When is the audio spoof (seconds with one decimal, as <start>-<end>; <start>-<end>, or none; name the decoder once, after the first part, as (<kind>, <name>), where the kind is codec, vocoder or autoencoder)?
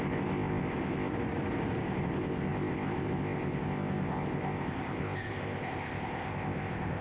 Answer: 0.0-1.1 (codec, ZipCodec); 1.8-7.0